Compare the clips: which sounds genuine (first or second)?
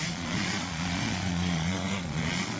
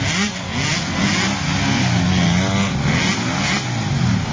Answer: second